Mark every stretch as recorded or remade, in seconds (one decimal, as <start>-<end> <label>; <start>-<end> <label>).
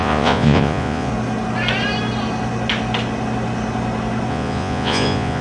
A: 0.0-1.1 remade; 1.1-4.3 recorded; 4.3-5.4 remade